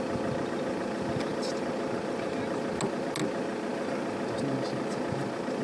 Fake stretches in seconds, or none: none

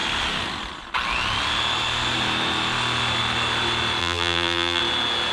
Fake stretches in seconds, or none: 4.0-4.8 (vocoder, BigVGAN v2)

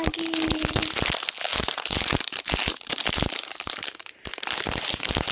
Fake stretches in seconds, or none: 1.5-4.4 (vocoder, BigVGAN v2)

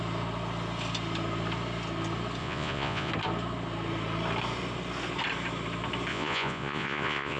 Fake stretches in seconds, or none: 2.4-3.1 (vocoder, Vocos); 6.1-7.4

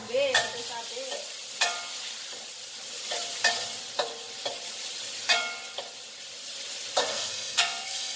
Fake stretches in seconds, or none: 7.1-8.2 (codec, SNAC)

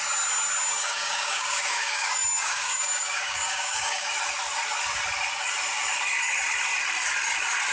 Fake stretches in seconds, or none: 0.7-4.1 (codec, DAC)

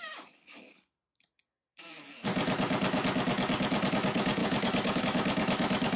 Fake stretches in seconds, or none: 0.0-2.3 (autoencoder, DAC-VAE); 3.9-6.0